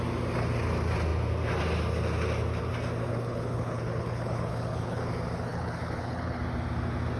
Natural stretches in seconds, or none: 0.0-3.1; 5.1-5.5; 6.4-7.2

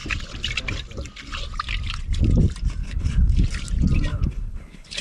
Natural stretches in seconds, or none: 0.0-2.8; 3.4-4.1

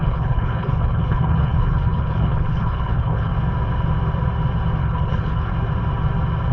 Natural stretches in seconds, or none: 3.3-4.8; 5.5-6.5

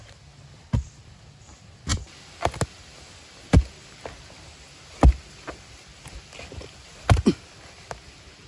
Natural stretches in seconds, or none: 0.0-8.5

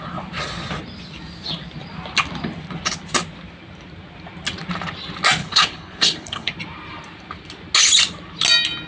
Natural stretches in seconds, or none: 0.0-5.4; 6.5-8.9

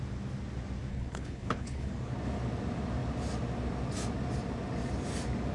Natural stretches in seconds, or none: 0.0-0.9; 1.9-5.5

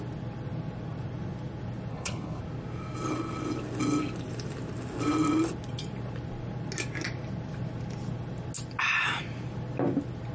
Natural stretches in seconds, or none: 0.0-1.9; 2.4-10.3